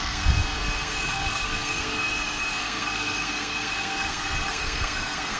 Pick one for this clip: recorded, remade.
remade